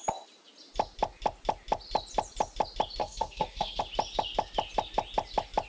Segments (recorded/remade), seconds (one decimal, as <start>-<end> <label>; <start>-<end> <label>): 0.0-3.0 recorded; 3.0-3.8 remade; 3.8-5.7 recorded